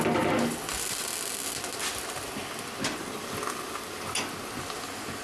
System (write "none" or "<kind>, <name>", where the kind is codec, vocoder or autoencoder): none